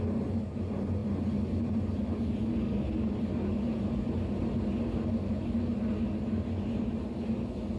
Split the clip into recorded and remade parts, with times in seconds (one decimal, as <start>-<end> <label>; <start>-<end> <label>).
0.0-7.8 recorded